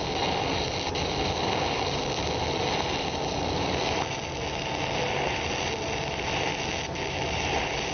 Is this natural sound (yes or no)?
yes